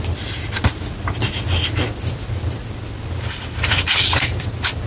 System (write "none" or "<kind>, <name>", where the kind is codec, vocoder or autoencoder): none